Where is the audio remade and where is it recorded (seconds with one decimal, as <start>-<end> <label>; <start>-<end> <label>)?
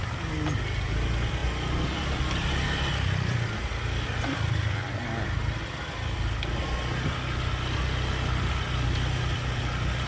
0.0-10.1 recorded